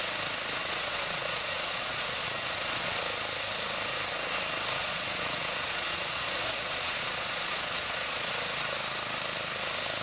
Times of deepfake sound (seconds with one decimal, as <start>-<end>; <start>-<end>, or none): 0.6-3.0; 4.8-8.3

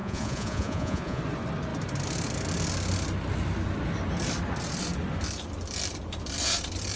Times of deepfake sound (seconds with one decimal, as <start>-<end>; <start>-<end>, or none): 0.0-1.2

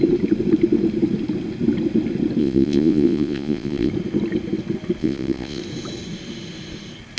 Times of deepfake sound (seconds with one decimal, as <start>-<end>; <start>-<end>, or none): 2.4-3.9; 5.0-5.6

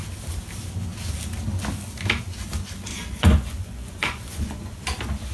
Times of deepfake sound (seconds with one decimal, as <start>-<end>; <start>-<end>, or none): 2.9-4.8

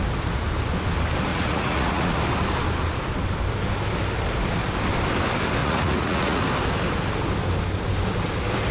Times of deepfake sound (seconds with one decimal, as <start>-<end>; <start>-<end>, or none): 1.3-2.2; 5.6-6.4

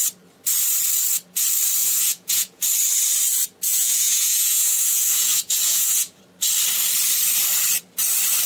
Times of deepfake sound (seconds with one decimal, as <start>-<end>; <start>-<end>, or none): 1.8-2.6; 3.7-6.2

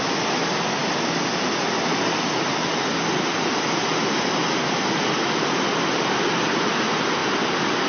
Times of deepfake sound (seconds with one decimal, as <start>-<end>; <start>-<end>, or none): none

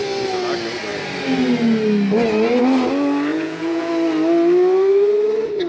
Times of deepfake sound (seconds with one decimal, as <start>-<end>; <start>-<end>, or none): 3.3-3.9